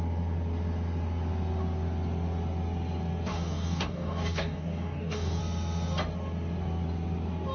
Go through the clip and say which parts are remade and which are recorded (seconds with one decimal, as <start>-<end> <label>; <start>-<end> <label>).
0.0-3.3 recorded; 3.3-5.4 remade; 5.4-7.5 recorded